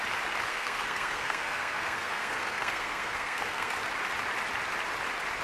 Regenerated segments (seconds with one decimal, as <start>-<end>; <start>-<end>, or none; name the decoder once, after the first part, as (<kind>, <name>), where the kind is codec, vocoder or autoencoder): 0.5-3.7 (codec, SNAC)